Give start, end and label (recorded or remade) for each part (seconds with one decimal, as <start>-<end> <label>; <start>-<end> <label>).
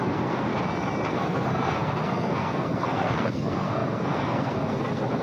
0.0-0.5 remade; 0.5-1.1 recorded; 1.1-5.2 remade